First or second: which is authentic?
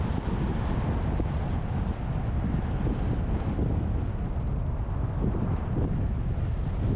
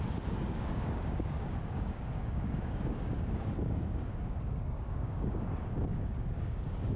first